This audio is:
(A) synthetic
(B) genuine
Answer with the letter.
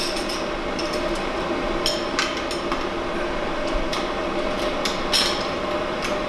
B